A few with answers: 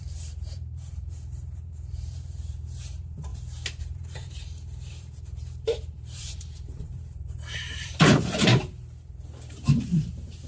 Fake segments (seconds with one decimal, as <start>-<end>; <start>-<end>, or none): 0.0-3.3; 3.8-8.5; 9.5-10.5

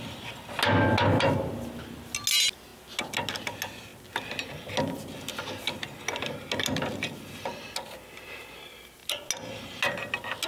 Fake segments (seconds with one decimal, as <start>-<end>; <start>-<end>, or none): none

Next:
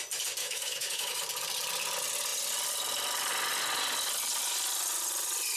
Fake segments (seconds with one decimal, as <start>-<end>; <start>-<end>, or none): 0.4-1.2